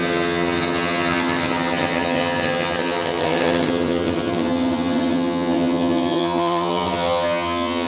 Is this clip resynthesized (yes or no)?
yes